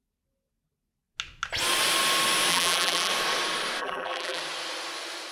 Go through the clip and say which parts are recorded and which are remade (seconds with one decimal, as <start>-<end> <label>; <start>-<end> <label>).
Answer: 0.0-2.5 recorded; 2.5-3.1 remade; 3.1-3.8 recorded; 3.8-4.4 remade; 4.4-5.3 recorded